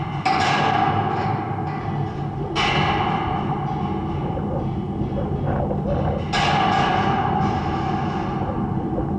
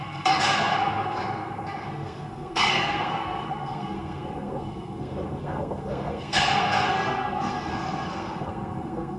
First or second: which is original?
first